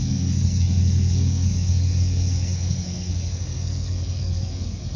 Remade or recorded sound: remade